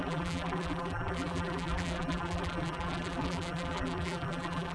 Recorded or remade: remade